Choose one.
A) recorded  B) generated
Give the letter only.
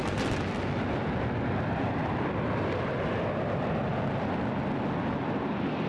A